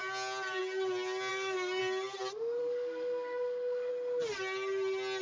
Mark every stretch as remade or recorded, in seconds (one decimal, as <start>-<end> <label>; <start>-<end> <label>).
0.0-1.3 recorded; 1.3-1.8 remade; 1.8-2.6 recorded; 2.6-3.9 remade; 3.9-5.2 recorded